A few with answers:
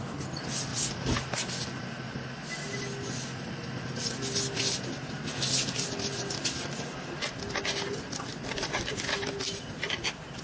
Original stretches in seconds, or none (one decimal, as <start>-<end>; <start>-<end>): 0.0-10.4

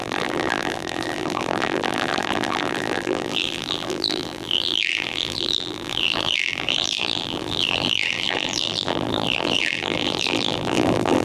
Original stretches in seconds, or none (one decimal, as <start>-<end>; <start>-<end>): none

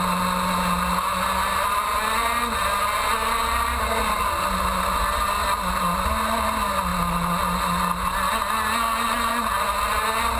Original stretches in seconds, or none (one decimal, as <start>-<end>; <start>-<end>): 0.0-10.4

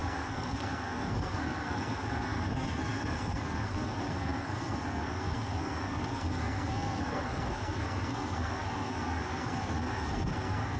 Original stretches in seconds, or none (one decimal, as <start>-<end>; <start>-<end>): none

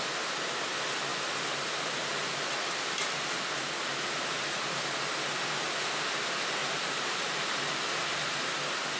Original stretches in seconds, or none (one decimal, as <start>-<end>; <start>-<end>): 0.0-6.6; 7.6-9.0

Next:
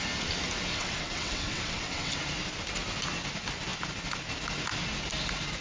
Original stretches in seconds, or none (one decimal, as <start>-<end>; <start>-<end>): 0.0-0.7; 2.1-5.6

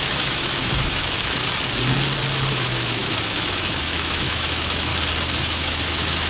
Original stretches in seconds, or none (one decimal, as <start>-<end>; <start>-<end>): 1.4-2.5; 4.9-5.4